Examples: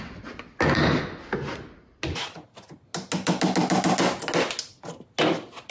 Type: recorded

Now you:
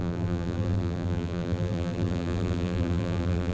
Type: remade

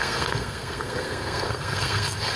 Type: remade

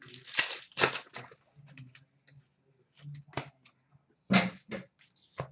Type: recorded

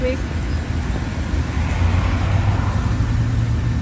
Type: recorded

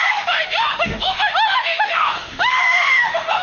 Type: remade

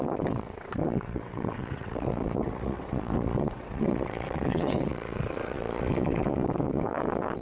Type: remade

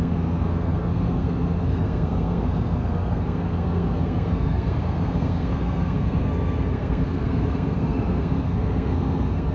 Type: remade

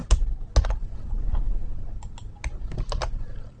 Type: recorded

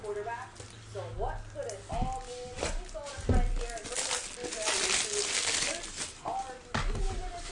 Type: recorded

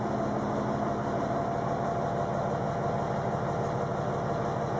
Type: recorded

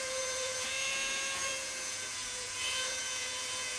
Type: remade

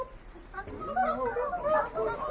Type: recorded